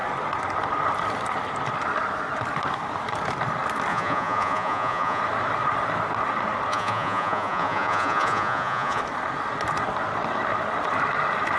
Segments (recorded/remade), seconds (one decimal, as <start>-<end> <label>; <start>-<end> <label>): 0.0-3.9 recorded; 3.9-5.2 remade; 5.2-6.7 recorded; 6.7-9.0 remade; 9.0-11.6 recorded